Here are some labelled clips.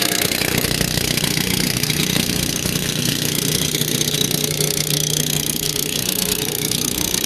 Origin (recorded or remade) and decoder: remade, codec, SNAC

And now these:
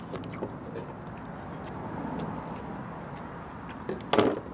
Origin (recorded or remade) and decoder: recorded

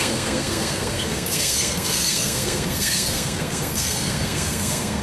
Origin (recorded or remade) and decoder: remade, codec, SNAC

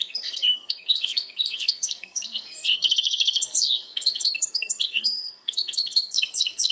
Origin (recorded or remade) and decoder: remade, codec, SNAC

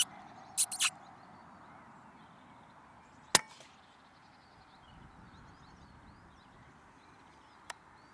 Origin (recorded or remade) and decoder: recorded